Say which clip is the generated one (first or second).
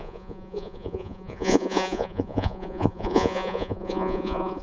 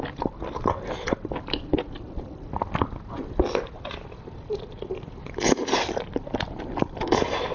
first